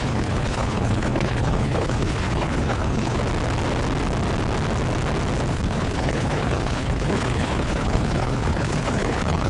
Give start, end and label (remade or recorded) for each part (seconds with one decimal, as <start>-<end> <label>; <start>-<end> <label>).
0.0-3.2 remade; 3.2-5.5 recorded; 5.5-9.5 remade